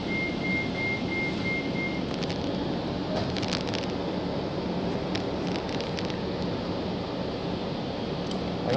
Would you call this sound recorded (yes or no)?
yes